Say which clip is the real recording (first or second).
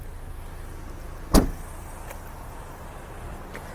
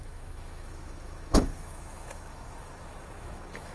first